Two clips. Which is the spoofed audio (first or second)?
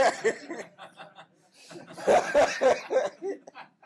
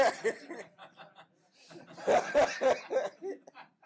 first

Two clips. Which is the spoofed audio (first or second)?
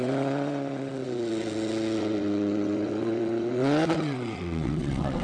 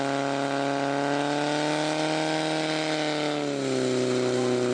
first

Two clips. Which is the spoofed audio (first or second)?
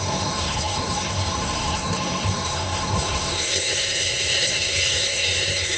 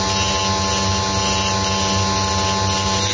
first